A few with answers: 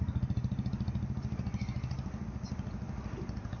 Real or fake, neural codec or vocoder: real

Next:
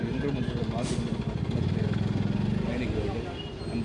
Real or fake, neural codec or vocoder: real